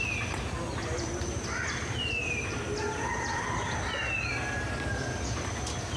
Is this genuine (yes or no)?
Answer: yes